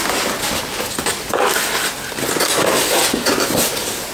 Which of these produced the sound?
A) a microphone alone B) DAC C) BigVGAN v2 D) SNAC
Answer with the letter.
A